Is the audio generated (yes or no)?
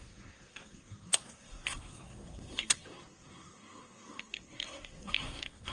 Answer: yes